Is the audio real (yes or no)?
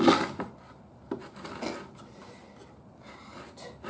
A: yes